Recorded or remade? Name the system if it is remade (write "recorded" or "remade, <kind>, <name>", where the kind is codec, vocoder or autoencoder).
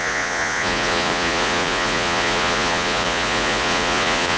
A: remade, vocoder, Vocos